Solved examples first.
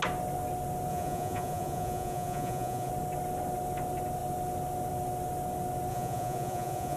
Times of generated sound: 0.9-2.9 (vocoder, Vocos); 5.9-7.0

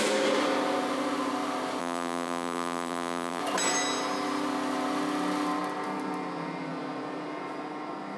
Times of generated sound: 1.8-3.4 (vocoder, BigVGAN v2)

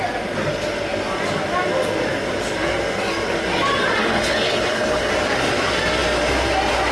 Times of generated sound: 4.0-5.1 (codec, HILCodec)

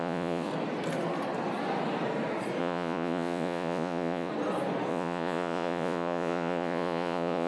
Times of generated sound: 0.0-0.5 (vocoder, Vocos); 2.6-4.3; 4.9-7.5